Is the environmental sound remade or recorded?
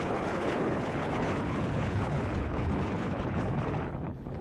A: remade